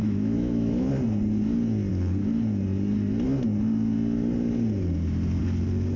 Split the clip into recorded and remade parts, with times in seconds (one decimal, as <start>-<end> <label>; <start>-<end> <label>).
0.0-0.9 remade; 0.9-6.0 recorded

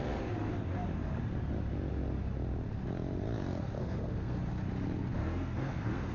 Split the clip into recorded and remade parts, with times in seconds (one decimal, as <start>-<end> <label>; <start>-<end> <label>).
0.0-3.8 recorded; 3.8-4.5 remade; 4.5-5.2 recorded; 5.2-6.1 remade

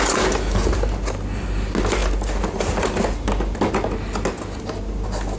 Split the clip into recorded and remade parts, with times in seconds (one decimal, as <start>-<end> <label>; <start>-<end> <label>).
0.0-5.4 recorded